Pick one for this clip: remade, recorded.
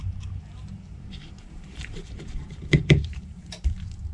remade